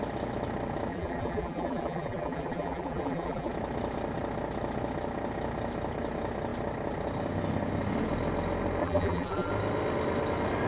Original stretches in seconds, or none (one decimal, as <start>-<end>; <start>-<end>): 0.0-0.9; 3.5-8.8; 9.5-10.7